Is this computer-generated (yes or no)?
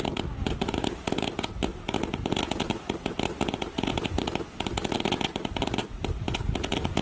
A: no